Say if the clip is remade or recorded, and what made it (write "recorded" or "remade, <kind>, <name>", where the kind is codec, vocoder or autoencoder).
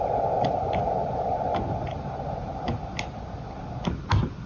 recorded